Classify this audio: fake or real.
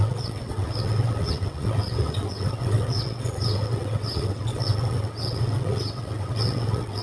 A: fake